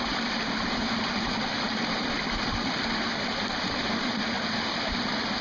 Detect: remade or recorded recorded